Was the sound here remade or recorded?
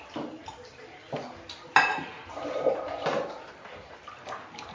recorded